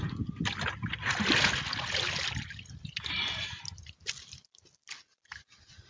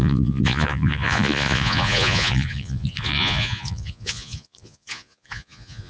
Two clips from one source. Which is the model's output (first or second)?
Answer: second